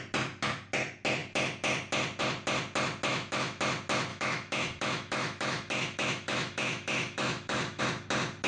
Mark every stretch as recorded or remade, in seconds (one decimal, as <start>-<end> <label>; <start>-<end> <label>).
0.0-3.1 recorded; 3.1-3.6 remade; 3.6-4.1 recorded; 4.1-7.8 remade; 7.8-8.5 recorded